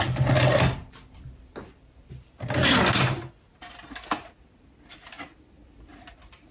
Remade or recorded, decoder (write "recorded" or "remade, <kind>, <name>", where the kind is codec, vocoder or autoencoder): recorded